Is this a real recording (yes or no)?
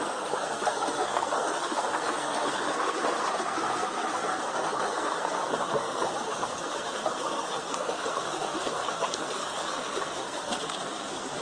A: no